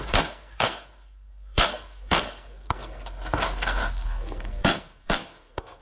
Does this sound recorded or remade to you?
remade